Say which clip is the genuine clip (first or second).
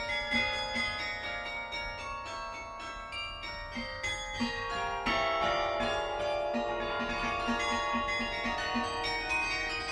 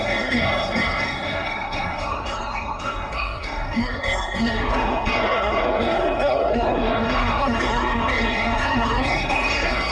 first